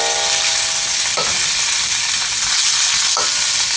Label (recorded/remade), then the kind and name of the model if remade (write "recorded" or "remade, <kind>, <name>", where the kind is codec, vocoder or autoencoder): recorded